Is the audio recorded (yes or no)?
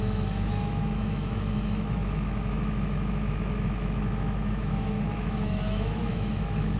no